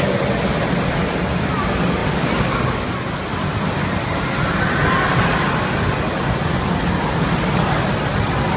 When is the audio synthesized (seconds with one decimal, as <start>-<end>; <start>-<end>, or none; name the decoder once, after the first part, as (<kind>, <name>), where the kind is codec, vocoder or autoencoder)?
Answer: none